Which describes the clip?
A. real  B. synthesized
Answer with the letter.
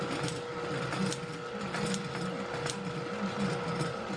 A